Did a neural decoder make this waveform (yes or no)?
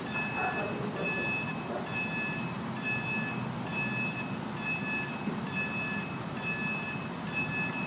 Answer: no